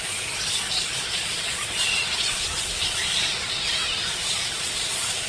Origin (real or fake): fake